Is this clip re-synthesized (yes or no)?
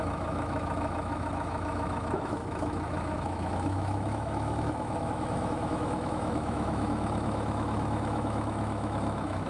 yes